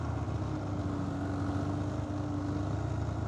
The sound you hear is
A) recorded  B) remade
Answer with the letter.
A